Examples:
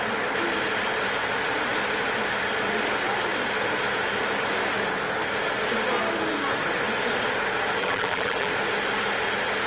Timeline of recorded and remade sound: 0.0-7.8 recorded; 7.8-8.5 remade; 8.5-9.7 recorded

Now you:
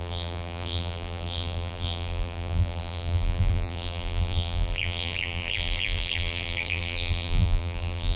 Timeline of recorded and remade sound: 0.0-8.2 remade